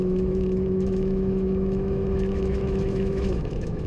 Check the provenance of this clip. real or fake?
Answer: fake